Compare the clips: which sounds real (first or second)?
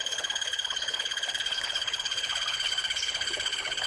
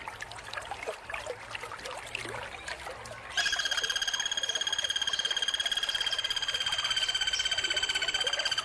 second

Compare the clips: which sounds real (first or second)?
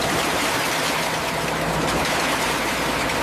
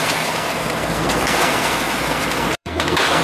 first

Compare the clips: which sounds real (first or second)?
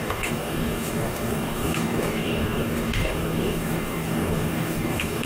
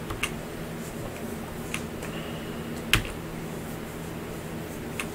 second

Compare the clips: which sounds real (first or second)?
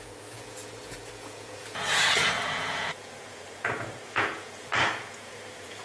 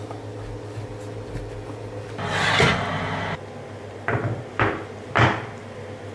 second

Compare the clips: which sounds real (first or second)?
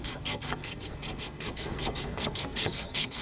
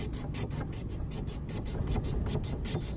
second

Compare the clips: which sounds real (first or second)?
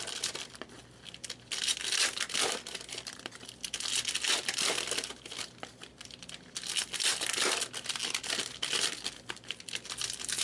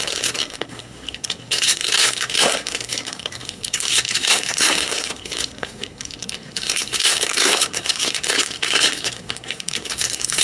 first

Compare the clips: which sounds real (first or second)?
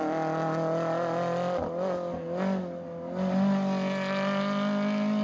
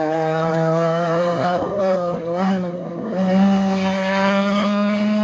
first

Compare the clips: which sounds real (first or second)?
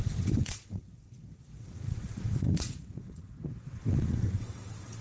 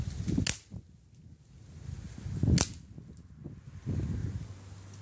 second